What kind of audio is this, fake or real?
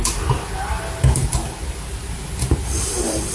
real